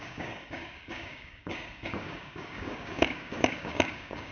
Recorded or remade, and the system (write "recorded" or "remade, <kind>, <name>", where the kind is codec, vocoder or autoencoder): remade, codec, DAC